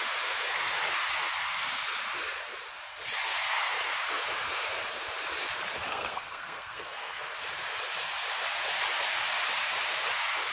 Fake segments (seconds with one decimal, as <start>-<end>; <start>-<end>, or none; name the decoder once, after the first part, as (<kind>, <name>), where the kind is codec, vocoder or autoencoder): 5.9-7.2 (codec, SNAC)